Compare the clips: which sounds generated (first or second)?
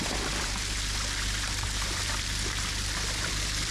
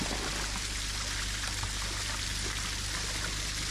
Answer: first